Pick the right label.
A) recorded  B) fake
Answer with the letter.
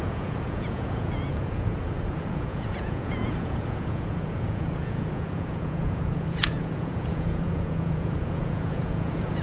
B